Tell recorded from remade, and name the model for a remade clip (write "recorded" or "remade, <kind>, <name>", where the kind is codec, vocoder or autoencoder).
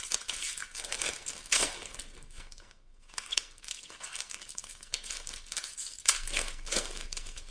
remade, codec, SNAC